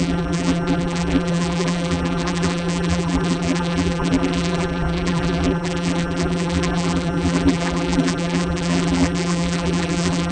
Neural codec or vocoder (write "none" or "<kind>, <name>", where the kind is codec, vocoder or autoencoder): vocoder, BigVGAN v2